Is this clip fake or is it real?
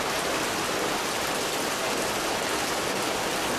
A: real